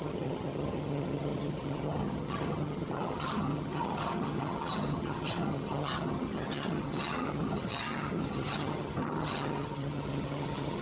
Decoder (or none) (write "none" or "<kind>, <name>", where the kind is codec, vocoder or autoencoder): vocoder, HiFi-GAN